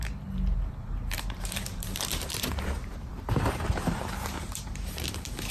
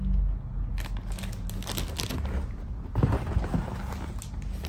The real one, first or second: second